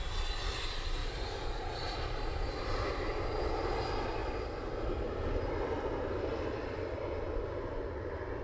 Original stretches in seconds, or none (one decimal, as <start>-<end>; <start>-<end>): 0.0-1.0; 2.6-8.4